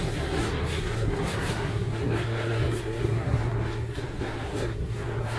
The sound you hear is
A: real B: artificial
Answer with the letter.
B